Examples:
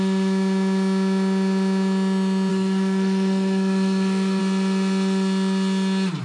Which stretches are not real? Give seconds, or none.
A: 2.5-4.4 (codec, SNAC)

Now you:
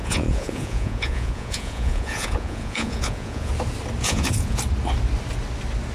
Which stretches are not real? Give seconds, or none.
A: 0.0-3.5 (vocoder, Vocos); 4.0-4.6